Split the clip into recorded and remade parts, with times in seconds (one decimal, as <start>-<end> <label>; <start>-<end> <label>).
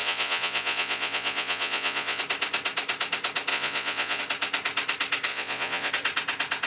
0.0-2.2 remade; 2.2-3.5 recorded; 3.5-4.2 remade; 4.2-5.3 recorded; 5.3-5.9 remade; 5.9-6.7 recorded